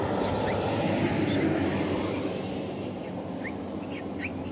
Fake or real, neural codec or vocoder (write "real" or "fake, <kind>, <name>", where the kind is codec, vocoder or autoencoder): real